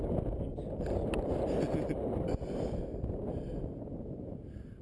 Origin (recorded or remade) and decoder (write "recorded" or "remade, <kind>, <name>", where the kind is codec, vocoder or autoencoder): recorded